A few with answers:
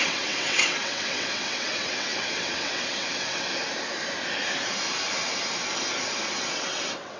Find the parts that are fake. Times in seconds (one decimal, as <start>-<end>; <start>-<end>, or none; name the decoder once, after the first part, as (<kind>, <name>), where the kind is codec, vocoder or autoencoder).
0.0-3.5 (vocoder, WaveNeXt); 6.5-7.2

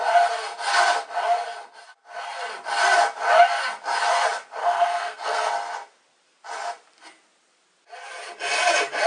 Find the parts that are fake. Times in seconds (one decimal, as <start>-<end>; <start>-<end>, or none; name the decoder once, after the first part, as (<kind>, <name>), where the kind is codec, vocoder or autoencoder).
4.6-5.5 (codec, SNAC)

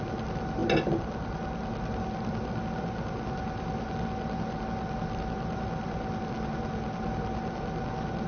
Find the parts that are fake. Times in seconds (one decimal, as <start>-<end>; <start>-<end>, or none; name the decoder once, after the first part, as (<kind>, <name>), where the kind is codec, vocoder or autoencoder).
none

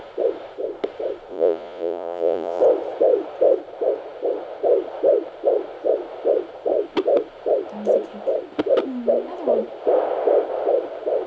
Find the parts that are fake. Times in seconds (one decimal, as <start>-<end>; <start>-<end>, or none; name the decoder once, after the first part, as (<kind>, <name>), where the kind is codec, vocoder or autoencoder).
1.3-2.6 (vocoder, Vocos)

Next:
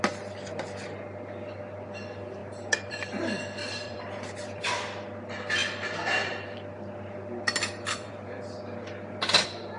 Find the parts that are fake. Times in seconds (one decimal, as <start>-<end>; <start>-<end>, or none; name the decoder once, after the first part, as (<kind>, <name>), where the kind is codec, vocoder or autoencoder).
2.4-2.9 (vocoder, BigVGAN v2); 3.6-4.7; 5.6-8.1